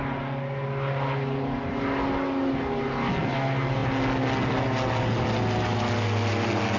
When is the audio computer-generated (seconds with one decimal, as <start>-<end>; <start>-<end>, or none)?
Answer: none